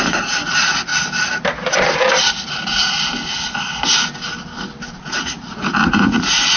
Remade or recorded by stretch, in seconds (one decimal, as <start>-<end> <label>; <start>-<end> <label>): 0.0-0.9 remade; 0.9-4.9 recorded; 4.9-6.6 remade